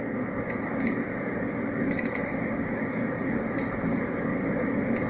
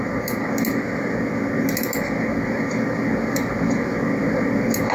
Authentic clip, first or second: second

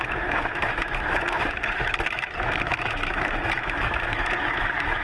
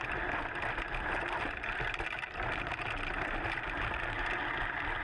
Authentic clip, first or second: second